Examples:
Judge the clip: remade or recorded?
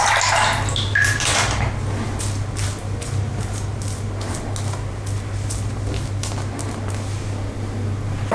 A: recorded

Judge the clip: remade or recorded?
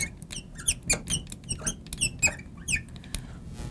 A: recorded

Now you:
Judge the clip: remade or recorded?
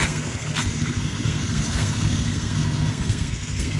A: remade